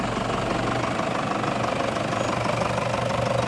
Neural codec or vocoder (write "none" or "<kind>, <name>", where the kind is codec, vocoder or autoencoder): none